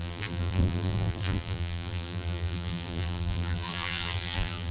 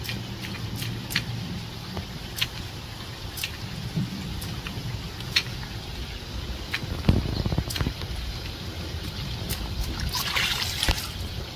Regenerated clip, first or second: first